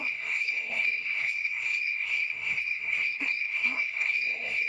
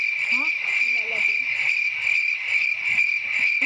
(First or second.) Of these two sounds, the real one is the second